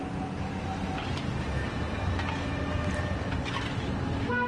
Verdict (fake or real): real